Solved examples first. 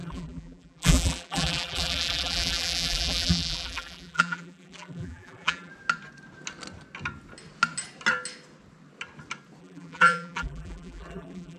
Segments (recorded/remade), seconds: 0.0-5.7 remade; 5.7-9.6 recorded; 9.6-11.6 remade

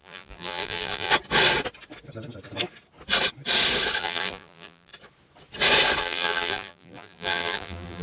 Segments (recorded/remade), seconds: 0.0-1.1 remade; 1.1-4.0 recorded; 4.0-4.9 remade; 4.9-6.0 recorded; 6.0-8.0 remade